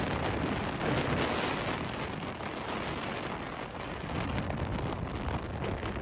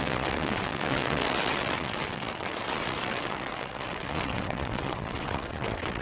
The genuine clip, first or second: first